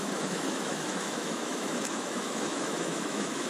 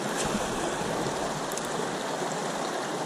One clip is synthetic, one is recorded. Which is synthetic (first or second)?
first